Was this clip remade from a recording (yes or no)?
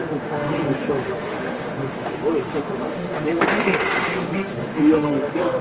yes